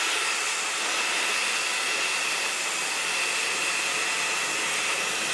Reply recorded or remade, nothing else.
recorded